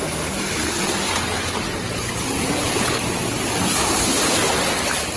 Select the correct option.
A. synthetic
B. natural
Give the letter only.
B